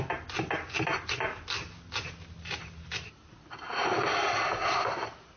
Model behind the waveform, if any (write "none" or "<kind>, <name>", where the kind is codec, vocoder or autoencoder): none